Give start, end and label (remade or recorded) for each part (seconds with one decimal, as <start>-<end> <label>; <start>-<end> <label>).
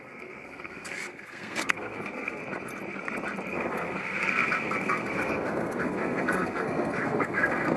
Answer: 0.0-2.4 remade; 2.4-3.5 recorded; 3.5-7.8 remade